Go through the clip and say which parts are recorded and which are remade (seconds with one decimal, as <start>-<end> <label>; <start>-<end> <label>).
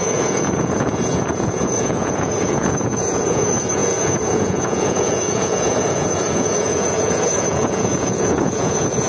0.0-9.1 remade